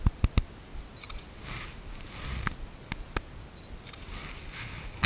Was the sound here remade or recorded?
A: recorded